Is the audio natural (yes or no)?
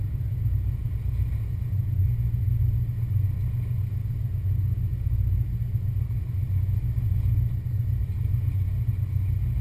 yes